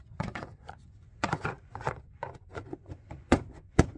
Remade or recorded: remade